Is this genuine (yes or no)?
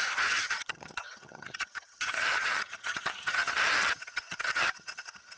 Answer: no